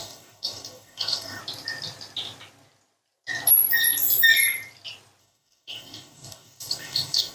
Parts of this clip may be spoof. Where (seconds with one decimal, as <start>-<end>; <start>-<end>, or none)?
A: 0.0-1.4; 5.2-7.3